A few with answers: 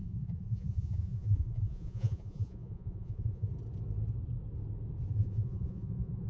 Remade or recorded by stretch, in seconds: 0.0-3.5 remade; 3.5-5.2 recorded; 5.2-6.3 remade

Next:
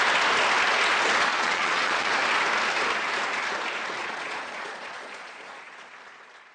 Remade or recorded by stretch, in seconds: 0.0-1.3 recorded; 1.3-2.1 remade; 2.1-4.0 recorded; 4.0-5.9 remade; 5.9-6.5 recorded

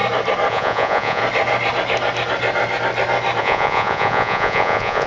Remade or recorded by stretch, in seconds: 0.0-0.5 recorded; 0.5-1.2 remade; 1.2-3.4 recorded; 3.4-5.1 remade

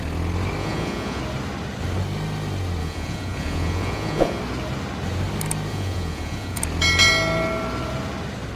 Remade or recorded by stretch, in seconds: 0.0-0.6 recorded; 0.6-1.2 remade; 1.2-2.8 recorded; 2.8-4.4 remade; 4.4-5.7 recorded; 5.7-6.6 remade; 6.6-8.6 recorded

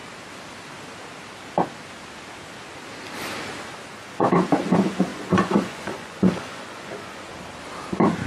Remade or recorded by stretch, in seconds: 0.0-3.9 recorded; 3.9-7.3 remade; 7.3-8.3 recorded

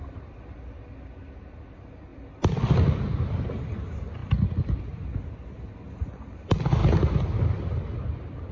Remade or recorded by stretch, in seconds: 0.0-8.5 recorded

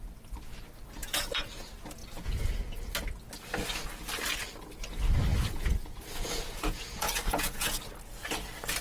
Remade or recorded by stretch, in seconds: 0.0-1.0 recorded; 1.0-1.5 remade; 1.5-2.0 recorded; 2.0-2.5 remade; 2.5-5.3 recorded; 5.3-7.8 remade; 7.8-8.8 recorded